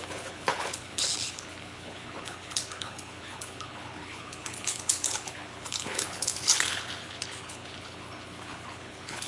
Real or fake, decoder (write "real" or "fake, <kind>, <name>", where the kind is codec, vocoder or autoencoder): fake, codec, HILCodec